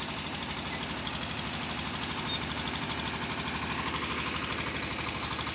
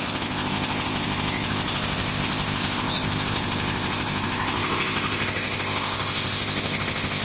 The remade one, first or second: second